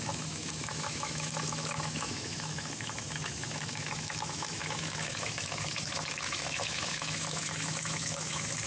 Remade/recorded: remade